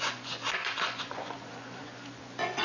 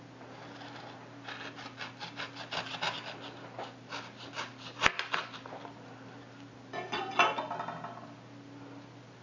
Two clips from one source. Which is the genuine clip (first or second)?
second